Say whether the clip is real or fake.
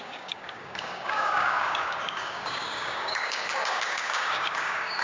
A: fake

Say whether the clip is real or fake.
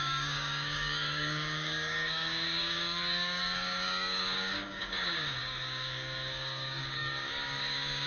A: fake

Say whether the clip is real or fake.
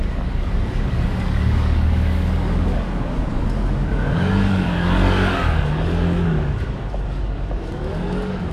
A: fake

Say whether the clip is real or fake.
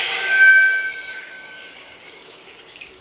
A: fake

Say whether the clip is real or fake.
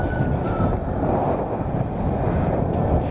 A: real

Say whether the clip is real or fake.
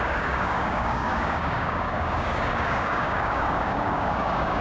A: fake